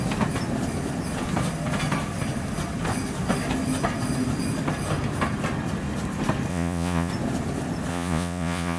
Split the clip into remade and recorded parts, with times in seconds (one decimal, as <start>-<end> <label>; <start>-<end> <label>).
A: 0.0-6.5 recorded; 6.5-7.1 remade; 7.1-7.9 recorded; 7.9-8.8 remade